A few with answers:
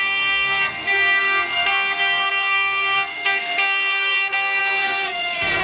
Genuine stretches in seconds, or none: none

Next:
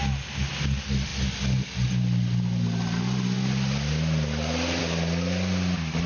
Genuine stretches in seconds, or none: 0.0-6.1